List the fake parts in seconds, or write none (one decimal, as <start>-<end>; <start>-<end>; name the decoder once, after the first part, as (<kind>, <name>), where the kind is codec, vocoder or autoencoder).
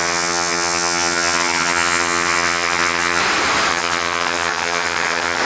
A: 0.0-3.2 (vocoder, HiFi-GAN); 3.7-5.4